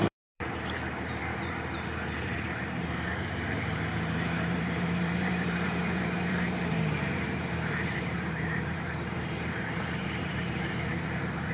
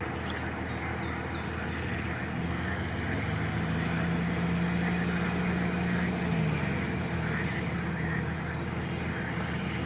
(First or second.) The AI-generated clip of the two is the first